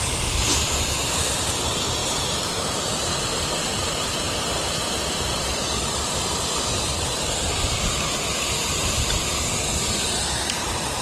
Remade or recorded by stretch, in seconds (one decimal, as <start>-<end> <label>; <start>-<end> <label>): 0.0-2.0 recorded; 2.0-2.9 remade; 2.9-11.0 recorded